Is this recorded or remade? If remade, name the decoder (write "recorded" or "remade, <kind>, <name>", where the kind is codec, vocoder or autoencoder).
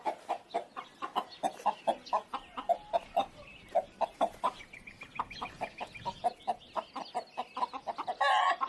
recorded